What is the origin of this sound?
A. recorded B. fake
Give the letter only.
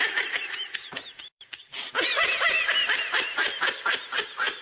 B